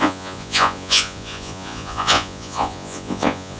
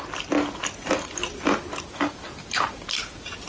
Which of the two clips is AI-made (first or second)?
first